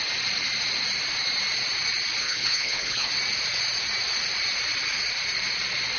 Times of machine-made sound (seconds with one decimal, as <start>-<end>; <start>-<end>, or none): 2.2-3.1

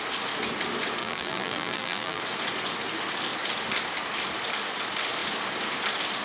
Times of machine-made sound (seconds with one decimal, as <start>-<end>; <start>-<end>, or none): 1.0-2.2